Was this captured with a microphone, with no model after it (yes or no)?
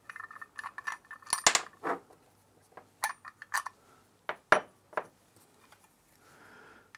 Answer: yes